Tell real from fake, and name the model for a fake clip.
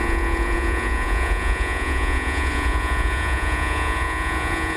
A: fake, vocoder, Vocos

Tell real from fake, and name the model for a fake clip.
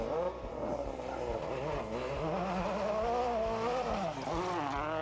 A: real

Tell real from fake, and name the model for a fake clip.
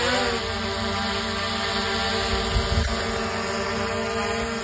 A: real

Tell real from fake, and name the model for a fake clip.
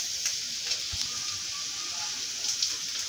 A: real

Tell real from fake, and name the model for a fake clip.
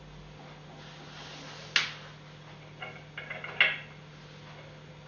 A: real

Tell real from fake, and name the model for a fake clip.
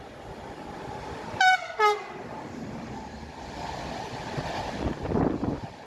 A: real